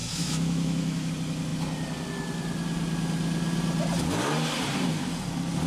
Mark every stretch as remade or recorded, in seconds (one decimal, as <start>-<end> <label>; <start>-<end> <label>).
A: 0.0-1.1 remade; 1.1-5.7 recorded